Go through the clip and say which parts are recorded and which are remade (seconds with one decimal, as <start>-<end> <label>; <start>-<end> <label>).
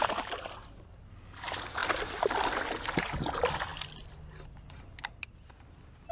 0.0-6.1 recorded